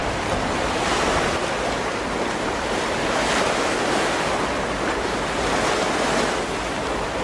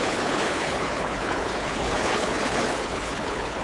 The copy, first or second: second